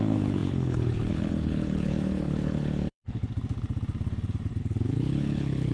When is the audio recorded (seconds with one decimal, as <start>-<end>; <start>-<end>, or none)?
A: 3.2-4.6